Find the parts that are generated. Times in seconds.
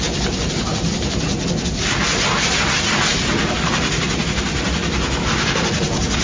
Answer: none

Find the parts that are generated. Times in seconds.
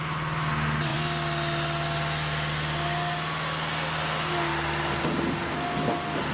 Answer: none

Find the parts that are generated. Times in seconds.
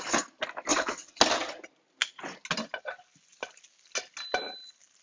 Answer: 0.7-1.2 (vocoder, WaveNeXt)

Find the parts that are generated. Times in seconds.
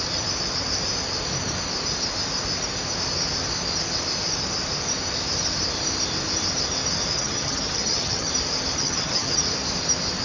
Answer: 7.1-8.3 (vocoder, HiFi-GAN); 8.8-9.4